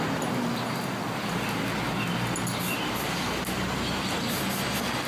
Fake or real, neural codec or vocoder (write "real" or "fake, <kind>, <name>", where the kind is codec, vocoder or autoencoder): real